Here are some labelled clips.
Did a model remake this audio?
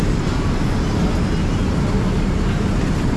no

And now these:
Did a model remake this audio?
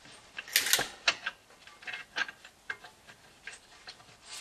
no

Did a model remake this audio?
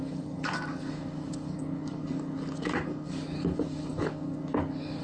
yes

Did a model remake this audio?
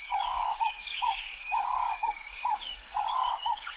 yes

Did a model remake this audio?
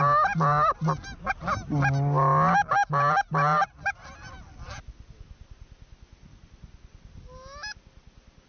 no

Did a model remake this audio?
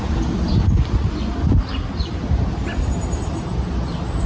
no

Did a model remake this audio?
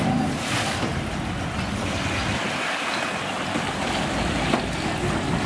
no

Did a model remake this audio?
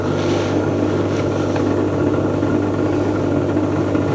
no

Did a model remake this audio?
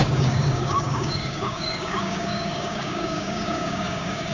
yes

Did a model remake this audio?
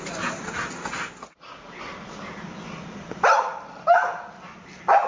no